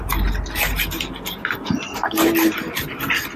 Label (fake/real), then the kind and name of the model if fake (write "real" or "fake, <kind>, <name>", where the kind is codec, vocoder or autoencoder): real